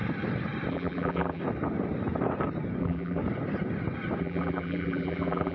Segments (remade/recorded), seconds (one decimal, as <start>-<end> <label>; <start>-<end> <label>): 0.0-0.7 recorded; 0.7-1.4 remade; 1.4-2.8 recorded; 2.8-3.2 remade; 3.2-4.2 recorded; 4.2-5.5 remade